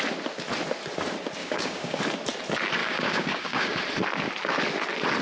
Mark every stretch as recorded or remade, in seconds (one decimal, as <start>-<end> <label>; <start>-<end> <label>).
0.0-1.4 recorded; 1.4-2.0 remade; 2.0-2.8 recorded; 2.8-3.8 remade; 3.8-5.2 recorded